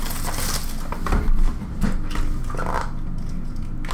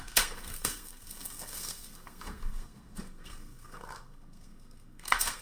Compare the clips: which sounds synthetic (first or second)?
second